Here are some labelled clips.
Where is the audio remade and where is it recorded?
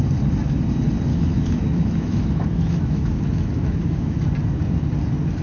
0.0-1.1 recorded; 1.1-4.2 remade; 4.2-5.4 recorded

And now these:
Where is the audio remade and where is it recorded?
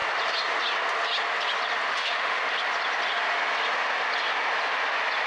0.0-1.9 recorded; 1.9-2.4 remade; 2.4-5.3 recorded